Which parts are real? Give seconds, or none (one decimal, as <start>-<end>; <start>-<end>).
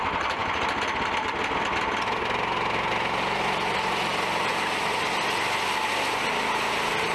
0.0-7.1